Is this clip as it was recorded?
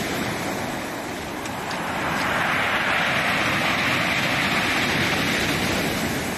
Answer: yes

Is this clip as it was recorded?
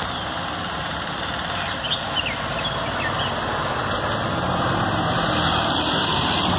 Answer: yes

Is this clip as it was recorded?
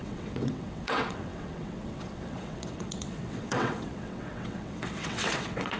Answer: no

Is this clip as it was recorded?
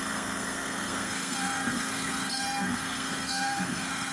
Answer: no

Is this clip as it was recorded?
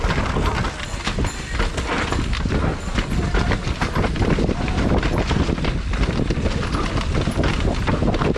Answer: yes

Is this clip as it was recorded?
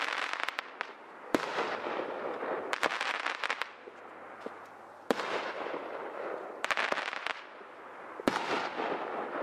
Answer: yes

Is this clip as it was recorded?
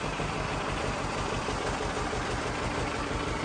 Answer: yes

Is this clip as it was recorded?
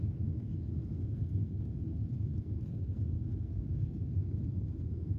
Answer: no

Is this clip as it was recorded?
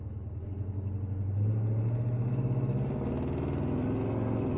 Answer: yes